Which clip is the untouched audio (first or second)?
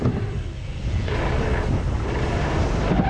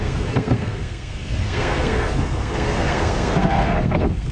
first